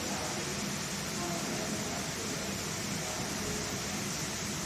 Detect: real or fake real